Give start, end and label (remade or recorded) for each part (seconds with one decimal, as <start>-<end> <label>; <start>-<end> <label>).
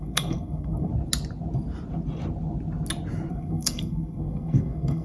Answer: 0.0-0.9 remade; 0.9-3.3 recorded; 3.3-5.0 remade